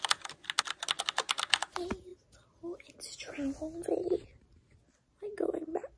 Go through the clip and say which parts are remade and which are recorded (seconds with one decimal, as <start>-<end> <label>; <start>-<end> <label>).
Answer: 0.0-6.0 recorded